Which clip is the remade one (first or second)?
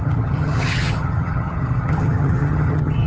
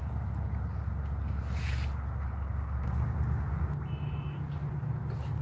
first